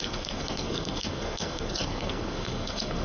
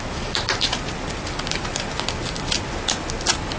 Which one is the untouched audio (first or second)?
second